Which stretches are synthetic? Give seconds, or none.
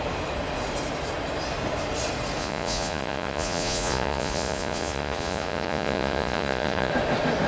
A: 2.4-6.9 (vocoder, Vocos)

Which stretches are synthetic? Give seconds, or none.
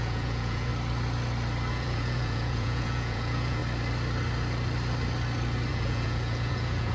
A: 0.0-0.7 (vocoder, Vocos); 1.7-3.6; 5.7-6.9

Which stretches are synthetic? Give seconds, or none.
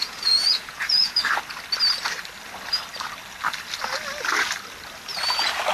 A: 0.0-1.2 (vocoder, Vocos)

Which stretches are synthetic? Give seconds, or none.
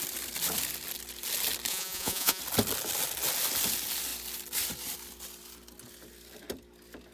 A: 1.7-2.4 (vocoder, Vocos)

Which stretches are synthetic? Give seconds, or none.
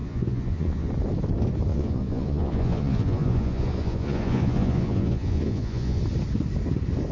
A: 0.0-0.9 (vocoder, Vocos); 1.7-6.0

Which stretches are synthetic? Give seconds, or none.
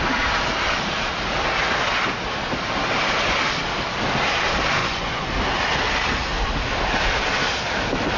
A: 4.8-5.3 (vocoder, Vocos)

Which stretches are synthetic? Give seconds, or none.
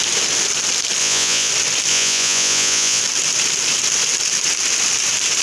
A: 1.0-1.5 (vocoder, Vocos); 1.9-3.0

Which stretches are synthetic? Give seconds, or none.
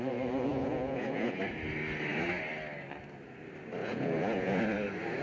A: 0.5-1.4 (vocoder, Vocos); 3.8-4.6